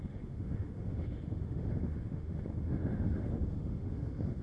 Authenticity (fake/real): fake